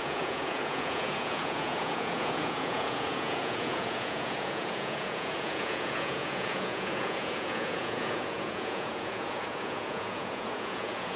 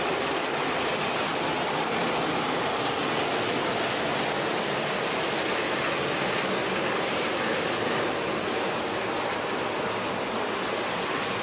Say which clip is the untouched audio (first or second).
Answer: second